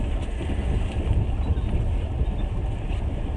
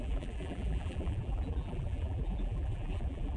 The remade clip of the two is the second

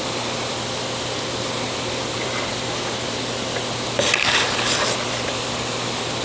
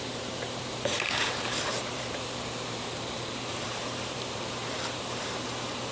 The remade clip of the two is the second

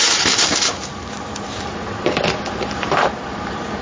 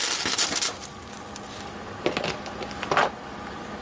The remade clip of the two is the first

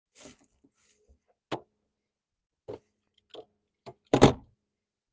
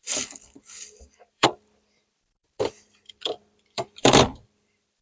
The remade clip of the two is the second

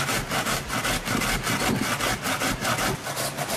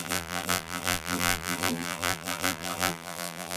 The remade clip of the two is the second